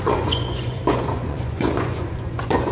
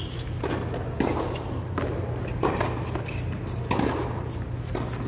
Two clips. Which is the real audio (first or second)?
second